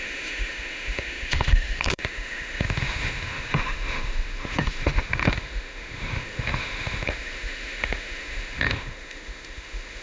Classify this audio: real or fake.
fake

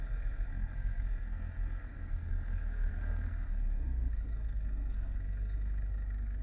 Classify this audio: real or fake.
fake